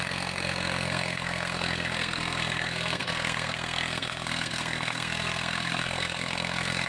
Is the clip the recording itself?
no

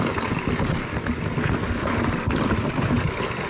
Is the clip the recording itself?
yes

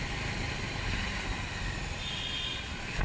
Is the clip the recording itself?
yes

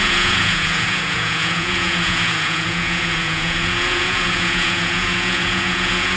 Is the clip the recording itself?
no